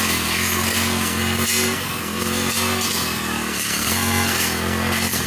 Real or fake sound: fake